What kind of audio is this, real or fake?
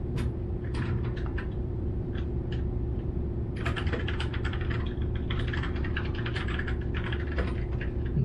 fake